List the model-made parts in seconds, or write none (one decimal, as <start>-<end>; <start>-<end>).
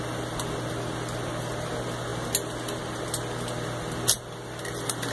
none